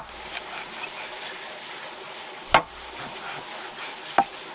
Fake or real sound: real